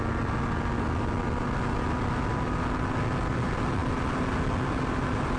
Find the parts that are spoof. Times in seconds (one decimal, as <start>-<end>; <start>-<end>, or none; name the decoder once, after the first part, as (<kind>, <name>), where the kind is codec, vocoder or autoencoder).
none